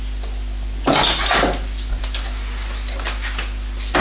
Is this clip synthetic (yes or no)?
no